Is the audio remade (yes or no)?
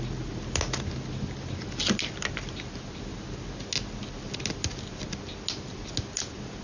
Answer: no